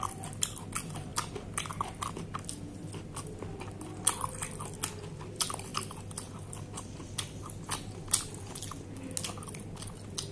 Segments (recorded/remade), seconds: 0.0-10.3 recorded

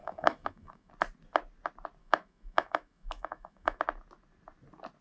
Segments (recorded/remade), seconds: 0.0-0.9 remade; 0.9-2.0 recorded; 2.0-3.8 remade; 3.8-5.0 recorded